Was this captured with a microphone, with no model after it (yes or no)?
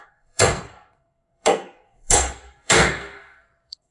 no